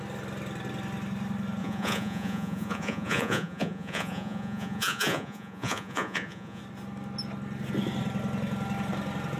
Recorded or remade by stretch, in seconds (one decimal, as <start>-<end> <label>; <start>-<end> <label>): 0.0-1.6 recorded; 1.6-6.6 remade; 6.6-9.4 recorded